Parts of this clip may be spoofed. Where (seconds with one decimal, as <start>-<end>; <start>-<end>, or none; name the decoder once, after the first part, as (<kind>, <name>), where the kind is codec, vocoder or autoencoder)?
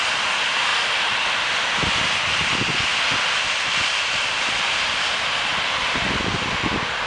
none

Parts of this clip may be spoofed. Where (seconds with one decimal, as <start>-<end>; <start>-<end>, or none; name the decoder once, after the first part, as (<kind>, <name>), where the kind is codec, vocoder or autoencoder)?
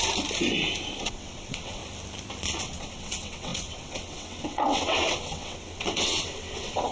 1.0-1.8 (vocoder, WaveNeXt); 2.6-6.9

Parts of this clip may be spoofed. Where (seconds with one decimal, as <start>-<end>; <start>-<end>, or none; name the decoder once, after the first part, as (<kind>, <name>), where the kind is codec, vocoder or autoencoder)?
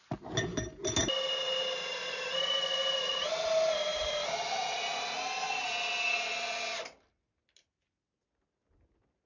1.9-3.1 (vocoder, BigVGAN v2); 3.9-4.8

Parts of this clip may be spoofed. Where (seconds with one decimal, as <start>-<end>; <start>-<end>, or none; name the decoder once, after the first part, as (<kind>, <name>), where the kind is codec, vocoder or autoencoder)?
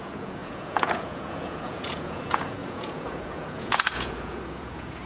0.0-5.1 (vocoder, Vocos)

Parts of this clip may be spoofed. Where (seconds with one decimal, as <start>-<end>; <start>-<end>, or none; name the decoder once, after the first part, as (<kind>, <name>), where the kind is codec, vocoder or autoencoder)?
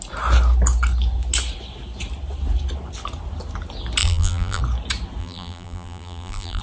4.0-4.6 (vocoder, BigVGAN v2); 5.2-6.6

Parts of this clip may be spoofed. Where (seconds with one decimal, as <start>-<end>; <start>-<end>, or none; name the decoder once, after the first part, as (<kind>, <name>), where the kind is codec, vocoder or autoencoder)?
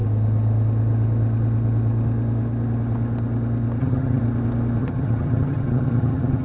3.8-4.2 (vocoder, HiFi-GAN); 4.8-6.4